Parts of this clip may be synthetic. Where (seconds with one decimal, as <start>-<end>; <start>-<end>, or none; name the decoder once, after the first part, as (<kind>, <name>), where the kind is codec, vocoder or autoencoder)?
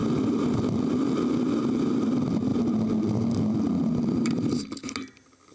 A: none